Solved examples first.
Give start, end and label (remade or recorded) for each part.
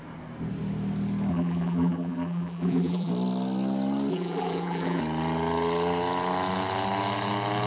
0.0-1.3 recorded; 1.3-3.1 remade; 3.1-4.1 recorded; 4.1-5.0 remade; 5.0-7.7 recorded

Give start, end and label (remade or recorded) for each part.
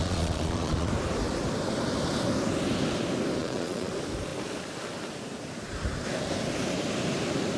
0.0-0.9 remade; 0.9-3.4 recorded; 3.4-3.9 remade; 3.9-7.6 recorded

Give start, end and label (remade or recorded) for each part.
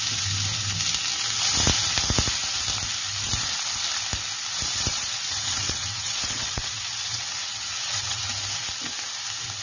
0.0-4.9 recorded; 4.9-8.3 remade; 8.3-9.6 recorded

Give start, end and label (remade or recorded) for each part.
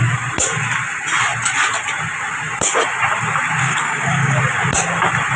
0.0-3.6 recorded; 3.6-4.4 remade; 4.4-5.4 recorded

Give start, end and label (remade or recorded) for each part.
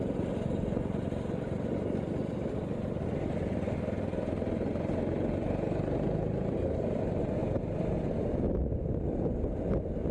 0.0-10.1 recorded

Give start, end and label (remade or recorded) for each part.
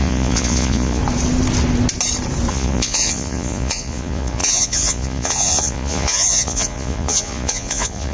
0.0-1.0 remade; 1.0-2.5 recorded; 2.5-8.1 remade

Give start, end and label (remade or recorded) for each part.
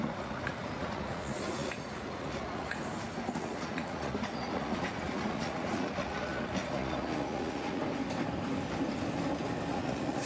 0.0-2.8 remade; 2.8-3.3 recorded; 3.3-7.8 remade; 7.8-9.7 recorded; 9.7-10.3 remade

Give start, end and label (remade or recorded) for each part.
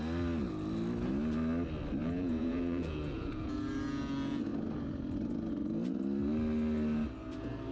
0.0-2.0 recorded; 2.0-3.6 remade; 3.6-7.7 recorded